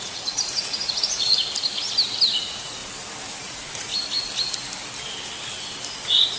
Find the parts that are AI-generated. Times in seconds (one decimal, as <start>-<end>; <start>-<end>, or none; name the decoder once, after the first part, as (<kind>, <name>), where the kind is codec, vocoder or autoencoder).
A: 0.0-1.4 (vocoder, Vocos); 2.4-2.8; 3.4-3.9; 5.9-6.4